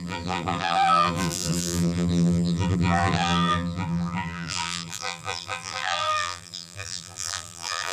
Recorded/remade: remade